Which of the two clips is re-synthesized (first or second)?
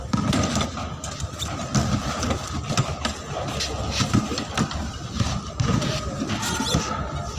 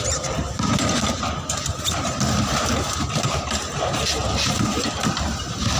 second